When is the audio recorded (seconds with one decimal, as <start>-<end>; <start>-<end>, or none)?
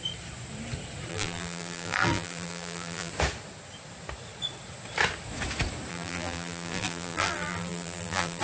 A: 0.0-1.1; 3.1-5.9